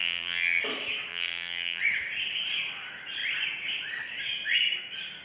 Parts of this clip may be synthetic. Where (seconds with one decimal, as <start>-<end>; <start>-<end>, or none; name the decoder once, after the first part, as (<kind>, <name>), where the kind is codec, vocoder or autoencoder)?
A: 0.0-0.6 (vocoder, BigVGAN v2); 1.1-1.8